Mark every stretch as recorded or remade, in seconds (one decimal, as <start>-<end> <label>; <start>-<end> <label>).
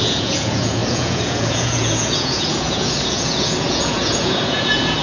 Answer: 0.0-5.0 remade